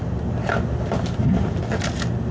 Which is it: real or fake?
real